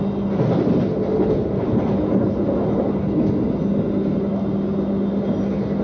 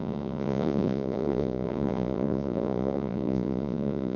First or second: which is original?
first